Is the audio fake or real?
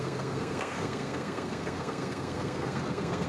fake